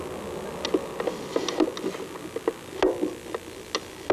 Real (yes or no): yes